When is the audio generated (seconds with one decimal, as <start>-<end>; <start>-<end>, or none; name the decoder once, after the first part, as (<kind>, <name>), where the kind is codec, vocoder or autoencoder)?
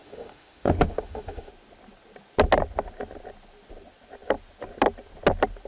0.0-1.5 (autoencoder, DAC-VAE)